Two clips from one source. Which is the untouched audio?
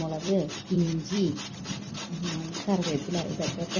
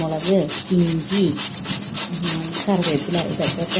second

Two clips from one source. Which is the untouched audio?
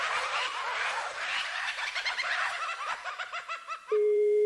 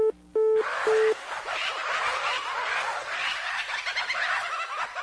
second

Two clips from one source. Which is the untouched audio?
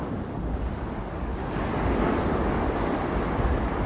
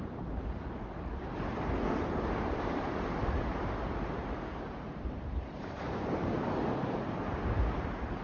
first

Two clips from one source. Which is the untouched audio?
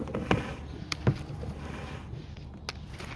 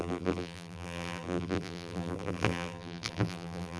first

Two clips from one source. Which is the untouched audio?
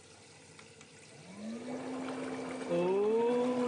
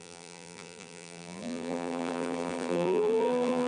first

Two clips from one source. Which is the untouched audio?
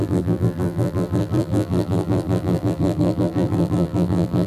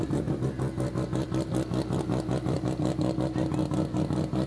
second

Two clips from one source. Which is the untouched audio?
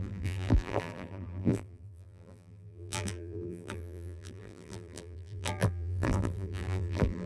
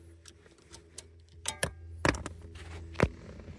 second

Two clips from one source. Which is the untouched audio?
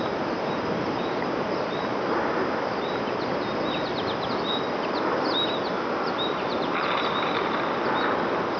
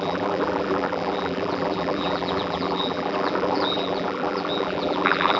first